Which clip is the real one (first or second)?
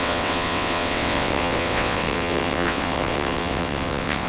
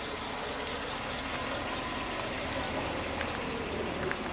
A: second